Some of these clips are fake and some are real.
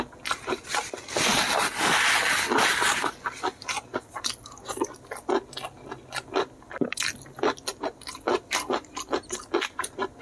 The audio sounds real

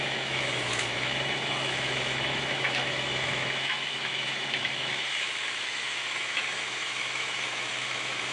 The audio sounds fake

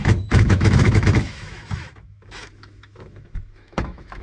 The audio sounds fake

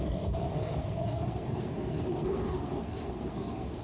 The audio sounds fake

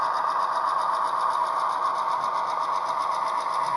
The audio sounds real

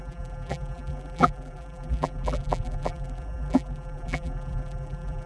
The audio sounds fake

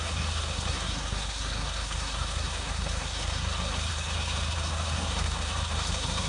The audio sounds fake